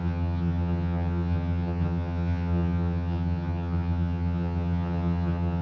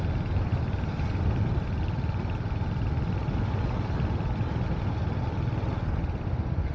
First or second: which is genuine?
second